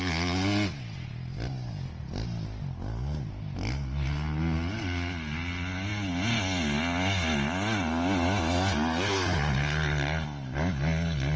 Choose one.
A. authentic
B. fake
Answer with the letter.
A